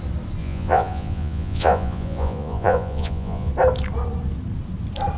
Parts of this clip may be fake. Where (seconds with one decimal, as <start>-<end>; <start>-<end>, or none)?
0.4-3.5

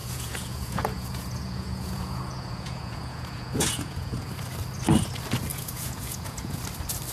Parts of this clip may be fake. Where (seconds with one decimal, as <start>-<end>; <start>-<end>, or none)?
0.0-4.3; 5.5-6.6

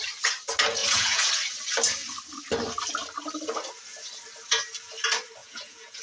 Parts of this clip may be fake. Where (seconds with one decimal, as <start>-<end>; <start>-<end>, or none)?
0.8-1.3; 5.4-6.0